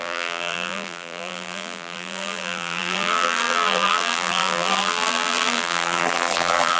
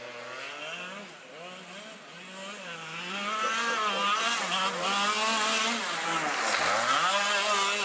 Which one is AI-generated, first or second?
first